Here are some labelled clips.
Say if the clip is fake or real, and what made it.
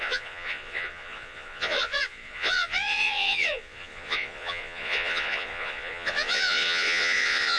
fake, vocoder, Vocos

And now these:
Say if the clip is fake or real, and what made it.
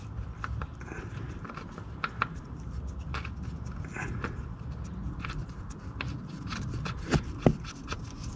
real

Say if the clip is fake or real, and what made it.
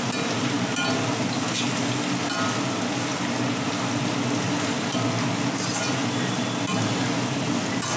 real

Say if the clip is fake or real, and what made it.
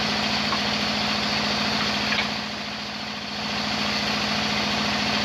real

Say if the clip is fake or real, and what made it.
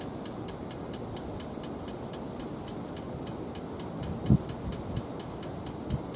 real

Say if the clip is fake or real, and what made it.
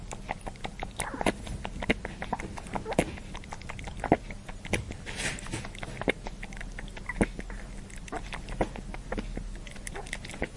real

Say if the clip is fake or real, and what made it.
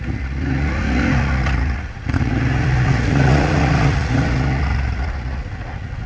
fake, vocoder, Vocos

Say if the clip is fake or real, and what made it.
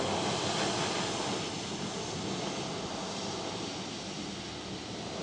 real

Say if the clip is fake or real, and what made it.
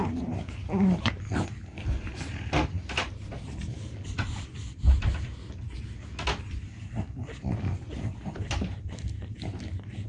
real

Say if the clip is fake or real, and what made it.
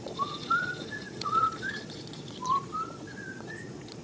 fake, vocoder, Vocos